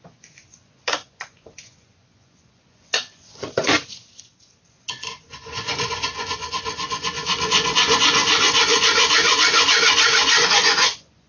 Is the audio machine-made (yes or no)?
yes